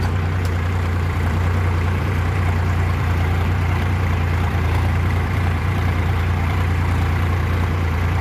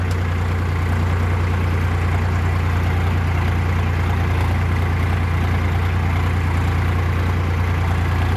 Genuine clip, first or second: second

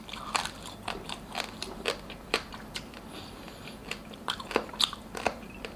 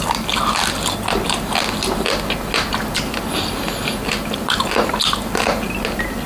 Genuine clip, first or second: second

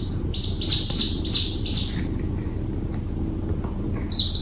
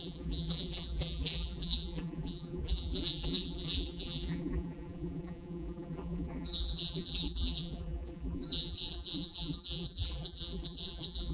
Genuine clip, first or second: first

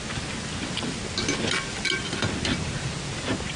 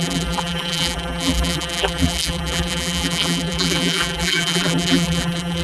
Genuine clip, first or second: first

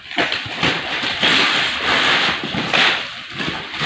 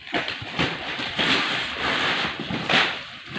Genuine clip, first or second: first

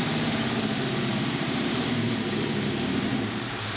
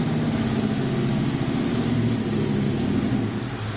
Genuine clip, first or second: second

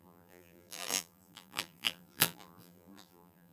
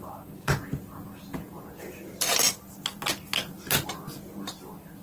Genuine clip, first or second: second